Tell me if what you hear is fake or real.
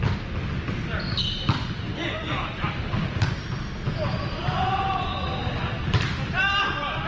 real